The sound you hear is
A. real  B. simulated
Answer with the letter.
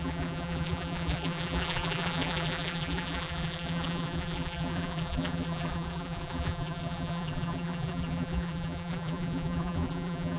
B